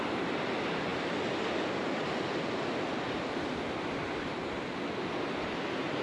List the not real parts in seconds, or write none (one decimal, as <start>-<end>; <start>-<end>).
none